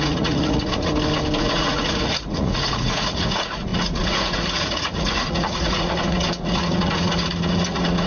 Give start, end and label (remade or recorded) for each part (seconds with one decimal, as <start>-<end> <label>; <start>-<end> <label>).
0.0-0.9 remade; 0.9-1.4 recorded; 1.4-8.1 remade